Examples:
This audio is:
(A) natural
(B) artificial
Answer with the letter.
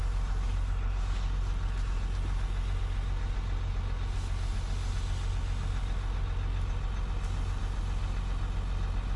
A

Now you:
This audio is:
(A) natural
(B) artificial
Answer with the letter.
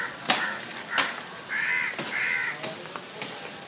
A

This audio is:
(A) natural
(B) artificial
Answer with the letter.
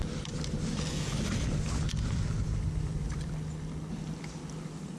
A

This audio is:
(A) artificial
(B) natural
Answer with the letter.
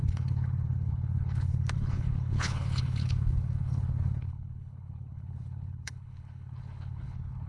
A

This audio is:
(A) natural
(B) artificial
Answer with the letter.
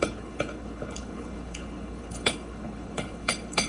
B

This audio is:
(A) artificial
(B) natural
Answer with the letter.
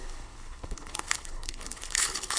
A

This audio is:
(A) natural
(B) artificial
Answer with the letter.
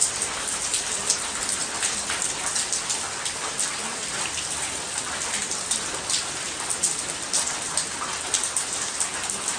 A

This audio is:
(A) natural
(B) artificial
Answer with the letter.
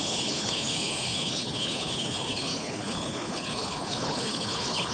B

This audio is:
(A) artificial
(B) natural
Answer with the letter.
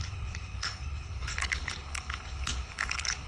A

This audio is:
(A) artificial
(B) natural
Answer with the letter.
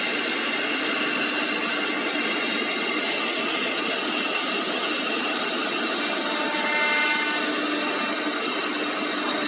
B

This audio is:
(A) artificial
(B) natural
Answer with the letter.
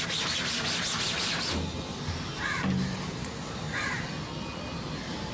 B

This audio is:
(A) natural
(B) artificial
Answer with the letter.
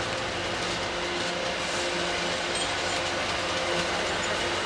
A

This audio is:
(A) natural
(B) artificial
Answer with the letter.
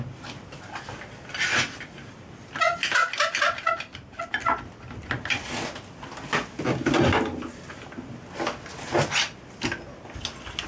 A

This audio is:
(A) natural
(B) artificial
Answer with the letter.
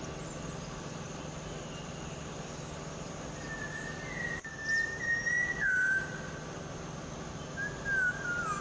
A